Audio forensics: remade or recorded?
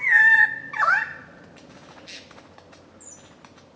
recorded